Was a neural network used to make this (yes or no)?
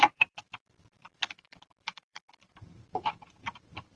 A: yes